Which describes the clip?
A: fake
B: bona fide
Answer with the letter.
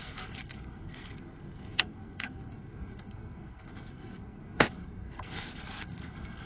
A